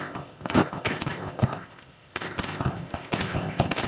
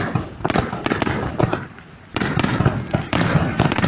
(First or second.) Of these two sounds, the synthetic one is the first